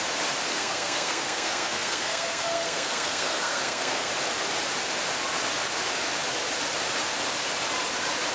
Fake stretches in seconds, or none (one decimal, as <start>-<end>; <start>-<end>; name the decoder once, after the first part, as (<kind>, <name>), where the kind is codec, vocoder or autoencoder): 0.5-4.1 (codec, SNAC)

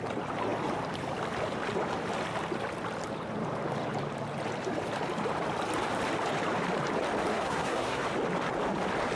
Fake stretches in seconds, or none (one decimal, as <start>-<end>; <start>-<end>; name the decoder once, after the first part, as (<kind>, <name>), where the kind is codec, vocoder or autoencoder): 7.3-8.0 (codec, SNAC)

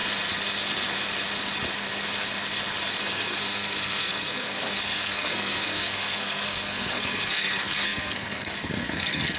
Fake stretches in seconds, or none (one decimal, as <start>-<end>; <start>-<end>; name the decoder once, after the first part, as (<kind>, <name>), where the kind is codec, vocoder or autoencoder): 3.0-9.4 (codec, SNAC)

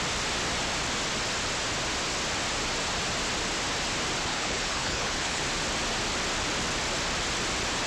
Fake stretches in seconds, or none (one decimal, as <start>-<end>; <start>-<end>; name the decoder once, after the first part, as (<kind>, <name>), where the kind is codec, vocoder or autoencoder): 4.3-5.4 (codec, HILCodec)